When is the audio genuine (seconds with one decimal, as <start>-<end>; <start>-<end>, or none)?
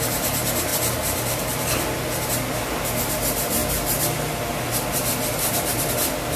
0.0-6.4